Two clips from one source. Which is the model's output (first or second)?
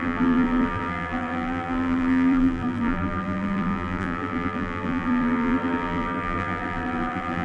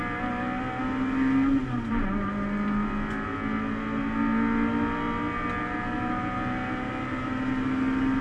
first